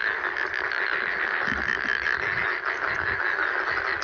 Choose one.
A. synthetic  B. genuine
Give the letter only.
B